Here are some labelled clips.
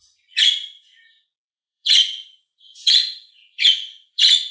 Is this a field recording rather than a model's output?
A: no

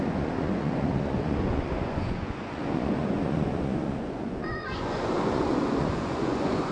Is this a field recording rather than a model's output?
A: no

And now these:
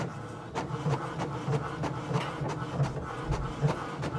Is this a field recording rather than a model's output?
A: yes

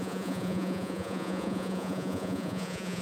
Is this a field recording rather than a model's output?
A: no